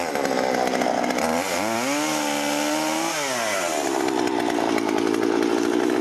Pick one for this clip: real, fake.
real